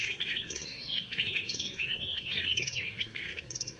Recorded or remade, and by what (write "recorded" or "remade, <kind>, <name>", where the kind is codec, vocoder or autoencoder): remade, codec, SNAC